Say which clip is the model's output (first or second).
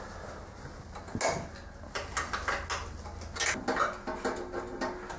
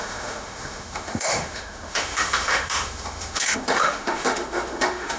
second